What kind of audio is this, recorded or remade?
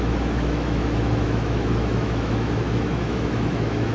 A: remade